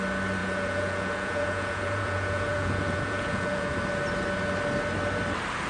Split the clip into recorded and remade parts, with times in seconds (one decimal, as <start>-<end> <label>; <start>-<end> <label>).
0.0-0.4 recorded; 0.4-3.8 remade; 3.8-5.7 recorded